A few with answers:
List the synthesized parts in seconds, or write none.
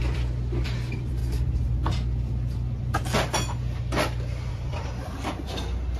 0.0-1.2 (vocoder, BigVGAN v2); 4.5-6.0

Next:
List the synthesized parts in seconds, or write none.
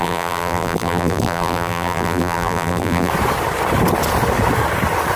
0.0-3.1 (vocoder, BigVGAN v2)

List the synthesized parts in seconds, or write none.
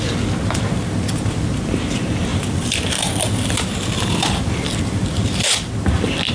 2.3-6.3 (vocoder, BigVGAN v2)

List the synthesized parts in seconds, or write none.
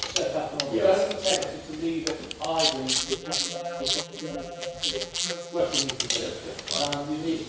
3.0-5.6 (vocoder, BigVGAN v2)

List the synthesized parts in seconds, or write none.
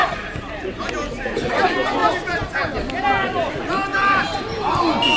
0.0-0.8 (vocoder, BigVGAN v2); 3.9-4.8